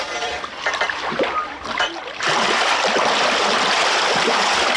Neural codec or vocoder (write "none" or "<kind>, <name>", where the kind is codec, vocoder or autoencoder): vocoder, BigVGAN v2